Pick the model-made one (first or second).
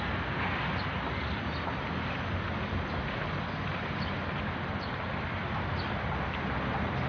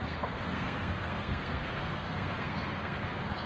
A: second